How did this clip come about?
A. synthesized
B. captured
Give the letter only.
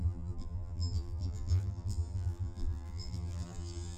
A